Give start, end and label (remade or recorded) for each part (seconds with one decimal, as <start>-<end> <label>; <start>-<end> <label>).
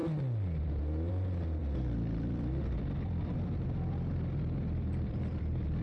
0.0-1.1 recorded; 1.1-5.8 remade